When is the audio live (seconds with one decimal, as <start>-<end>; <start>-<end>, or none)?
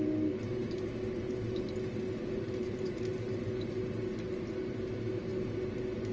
0.0-2.2; 3.5-6.1